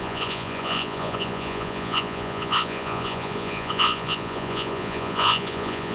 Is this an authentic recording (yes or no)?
no